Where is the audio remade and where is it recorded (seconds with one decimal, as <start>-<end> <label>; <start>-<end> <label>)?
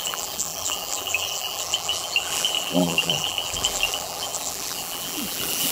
0.0-5.7 remade